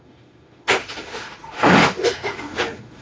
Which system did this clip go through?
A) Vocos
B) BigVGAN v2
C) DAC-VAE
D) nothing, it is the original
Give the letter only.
C